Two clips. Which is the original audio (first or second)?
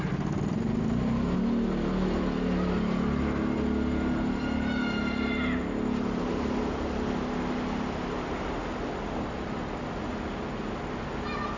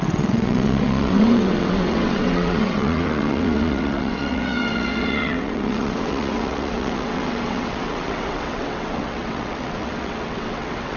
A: first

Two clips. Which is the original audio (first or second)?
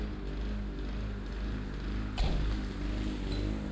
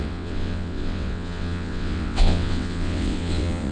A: first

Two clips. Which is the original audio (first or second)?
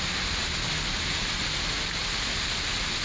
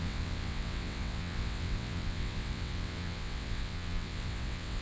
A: first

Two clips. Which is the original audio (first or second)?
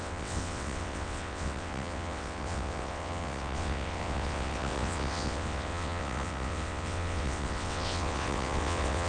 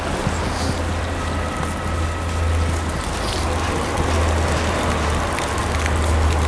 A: second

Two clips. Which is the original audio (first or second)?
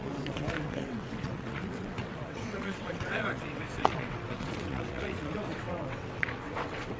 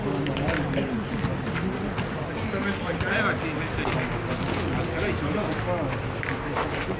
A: second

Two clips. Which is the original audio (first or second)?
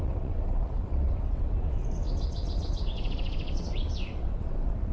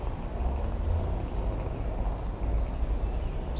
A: second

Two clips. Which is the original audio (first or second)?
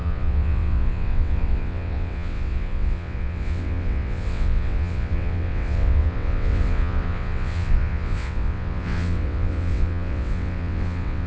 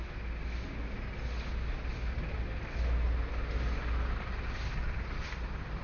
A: second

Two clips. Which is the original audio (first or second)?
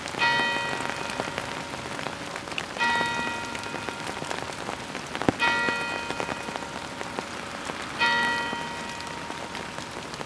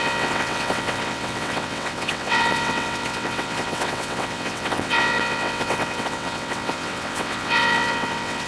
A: first